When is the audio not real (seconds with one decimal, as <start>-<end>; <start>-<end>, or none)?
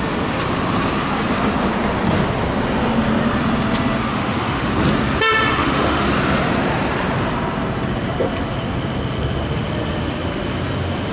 4.1-4.7; 5.6-6.1